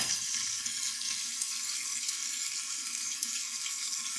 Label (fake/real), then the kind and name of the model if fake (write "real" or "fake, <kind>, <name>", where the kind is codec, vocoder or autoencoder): fake, codec, SNAC